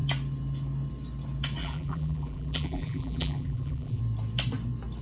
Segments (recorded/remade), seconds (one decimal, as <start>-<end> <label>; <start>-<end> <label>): 0.0-1.6 recorded; 1.6-4.0 remade; 4.0-5.0 recorded